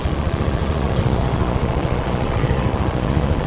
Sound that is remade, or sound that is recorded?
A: remade